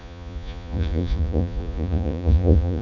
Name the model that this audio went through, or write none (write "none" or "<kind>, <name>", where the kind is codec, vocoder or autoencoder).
vocoder, Vocos